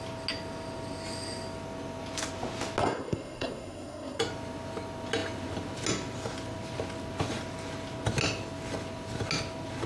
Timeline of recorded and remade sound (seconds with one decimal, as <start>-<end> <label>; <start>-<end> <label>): 0.0-2.8 recorded; 2.8-4.2 remade; 4.2-9.9 recorded